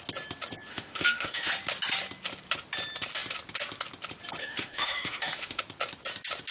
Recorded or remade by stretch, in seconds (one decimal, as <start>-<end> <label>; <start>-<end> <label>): 0.0-0.7 recorded; 0.7-1.5 remade; 1.5-4.4 recorded; 4.4-5.6 remade; 5.6-6.5 recorded